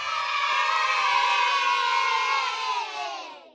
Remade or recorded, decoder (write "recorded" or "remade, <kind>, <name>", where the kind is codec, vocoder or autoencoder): recorded